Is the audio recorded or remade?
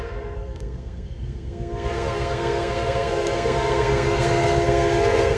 remade